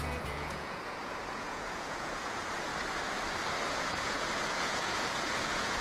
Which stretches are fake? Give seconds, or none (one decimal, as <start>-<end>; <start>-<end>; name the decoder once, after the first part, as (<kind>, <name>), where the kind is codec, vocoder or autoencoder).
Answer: 0.0-2.7 (vocoder, Vocos); 3.7-5.8